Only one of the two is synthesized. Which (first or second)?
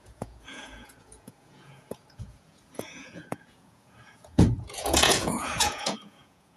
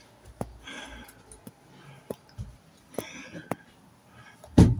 first